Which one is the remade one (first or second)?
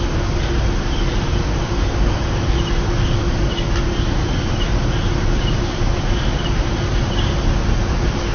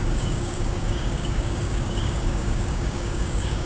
second